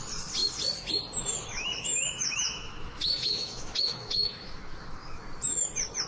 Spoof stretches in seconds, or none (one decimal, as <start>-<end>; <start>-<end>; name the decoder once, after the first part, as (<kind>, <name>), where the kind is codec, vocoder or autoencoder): 1.5-5.2 (autoencoder, DAC-VAE)